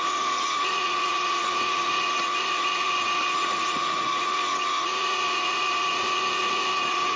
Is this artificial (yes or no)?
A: yes